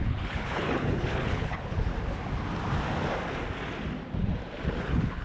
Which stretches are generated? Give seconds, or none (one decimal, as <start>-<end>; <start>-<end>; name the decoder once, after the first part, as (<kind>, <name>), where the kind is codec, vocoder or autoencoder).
0.0-1.9 (codec, HILCodec); 4.8-5.2